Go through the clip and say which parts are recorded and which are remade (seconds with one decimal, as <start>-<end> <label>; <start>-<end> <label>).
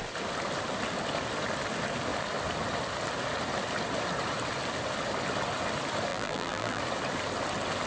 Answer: 0.0-6.1 recorded; 6.1-6.8 remade; 6.8-7.9 recorded